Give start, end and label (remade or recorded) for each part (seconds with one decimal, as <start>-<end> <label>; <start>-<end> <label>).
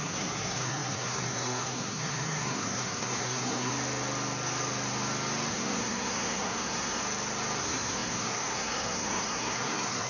0.0-3.7 remade; 3.7-5.5 recorded; 5.5-7.0 remade; 7.0-7.6 recorded; 7.6-10.1 remade